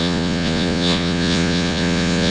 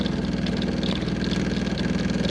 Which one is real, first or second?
second